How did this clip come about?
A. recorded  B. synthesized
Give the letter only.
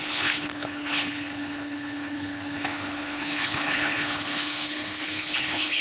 B